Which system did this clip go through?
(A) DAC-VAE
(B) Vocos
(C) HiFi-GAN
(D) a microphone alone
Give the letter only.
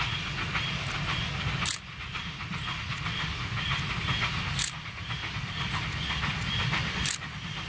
D